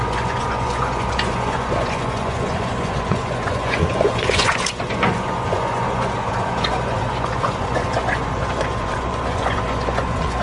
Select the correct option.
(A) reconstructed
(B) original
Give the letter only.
A